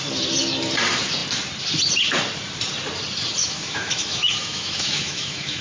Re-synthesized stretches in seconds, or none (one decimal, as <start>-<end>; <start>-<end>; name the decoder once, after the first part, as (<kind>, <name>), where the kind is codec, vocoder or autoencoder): 3.4-5.6 (autoencoder, DAC-VAE)